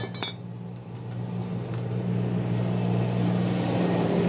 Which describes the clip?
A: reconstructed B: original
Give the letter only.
B